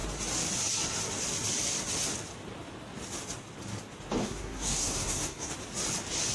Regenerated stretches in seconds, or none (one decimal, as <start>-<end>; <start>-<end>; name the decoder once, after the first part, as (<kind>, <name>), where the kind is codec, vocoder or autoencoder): 4.2-5.5 (codec, SNAC)